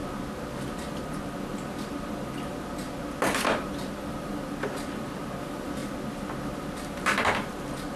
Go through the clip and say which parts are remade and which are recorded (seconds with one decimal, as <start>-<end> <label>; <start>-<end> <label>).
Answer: 0.0-8.0 recorded